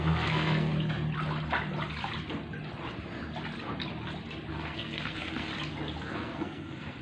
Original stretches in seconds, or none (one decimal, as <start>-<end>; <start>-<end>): 0.7-4.5; 5.5-6.0